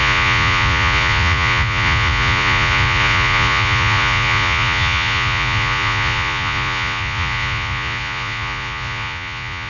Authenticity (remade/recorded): remade